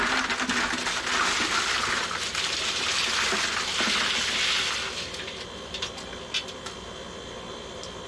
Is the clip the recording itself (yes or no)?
yes